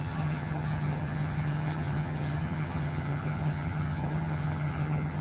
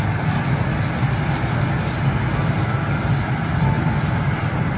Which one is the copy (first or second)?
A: first